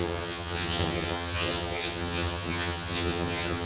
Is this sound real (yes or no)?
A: no